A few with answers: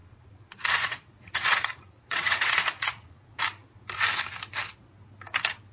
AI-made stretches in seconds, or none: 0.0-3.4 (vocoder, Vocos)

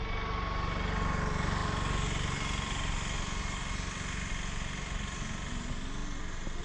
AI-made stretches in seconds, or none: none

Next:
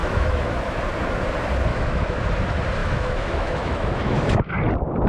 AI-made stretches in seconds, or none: 0.0-0.8 (autoencoder, DAC-VAE); 1.7-2.2; 2.8-4.5

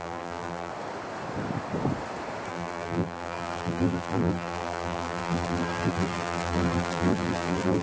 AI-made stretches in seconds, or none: 0.0-0.7 (vocoder, BigVGAN v2); 2.5-7.8